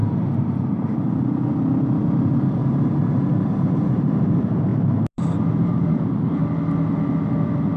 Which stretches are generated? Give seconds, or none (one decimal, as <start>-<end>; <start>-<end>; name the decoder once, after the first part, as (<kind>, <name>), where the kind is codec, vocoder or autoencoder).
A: 0.0-1.1 (vocoder, BigVGAN v2); 2.6-4.2; 4.7-6.4

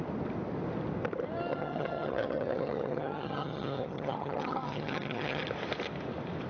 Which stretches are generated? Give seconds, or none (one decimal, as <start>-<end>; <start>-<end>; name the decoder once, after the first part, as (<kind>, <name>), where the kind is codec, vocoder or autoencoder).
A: 1.5-5.4 (vocoder, HiFi-GAN)

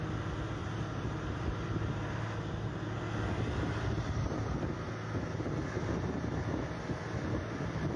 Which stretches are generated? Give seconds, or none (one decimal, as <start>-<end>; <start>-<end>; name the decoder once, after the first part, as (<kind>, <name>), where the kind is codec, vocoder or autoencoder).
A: 0.6-1.7 (vocoder, BigVGAN v2)

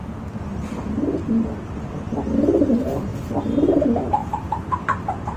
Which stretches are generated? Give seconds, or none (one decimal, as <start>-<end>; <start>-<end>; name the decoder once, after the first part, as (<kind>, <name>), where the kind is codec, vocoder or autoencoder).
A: 2.6-3.1 (vocoder, BigVGAN v2); 3.8-5.4